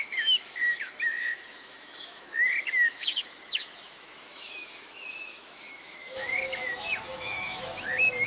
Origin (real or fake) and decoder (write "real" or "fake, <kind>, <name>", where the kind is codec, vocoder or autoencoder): fake, autoencoder, DAC-VAE